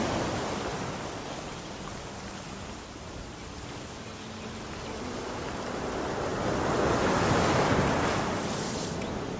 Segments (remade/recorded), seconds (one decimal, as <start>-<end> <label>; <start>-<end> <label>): 0.0-9.4 recorded